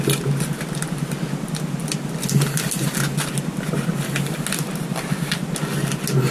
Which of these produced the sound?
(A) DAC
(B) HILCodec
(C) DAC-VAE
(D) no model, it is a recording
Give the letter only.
D